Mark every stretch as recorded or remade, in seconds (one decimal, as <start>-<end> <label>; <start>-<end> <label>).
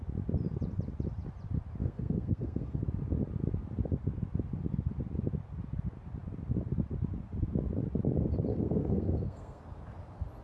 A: 0.0-1.8 recorded; 1.8-2.8 remade; 2.8-8.5 recorded; 8.5-9.6 remade; 9.6-10.4 recorded